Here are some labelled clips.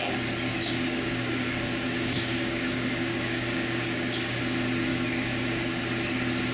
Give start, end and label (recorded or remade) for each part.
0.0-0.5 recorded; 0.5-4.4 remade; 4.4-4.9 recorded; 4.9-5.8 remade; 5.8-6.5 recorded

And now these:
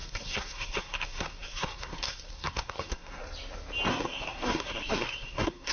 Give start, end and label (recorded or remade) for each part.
0.0-3.2 remade; 3.2-3.9 recorded; 3.9-5.7 remade